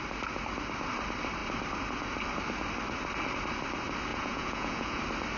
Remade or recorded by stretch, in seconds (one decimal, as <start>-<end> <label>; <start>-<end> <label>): 0.0-4.1 recorded; 4.1-5.0 remade; 5.0-5.4 recorded